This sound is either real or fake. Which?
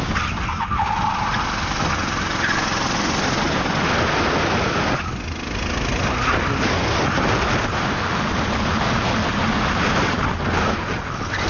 real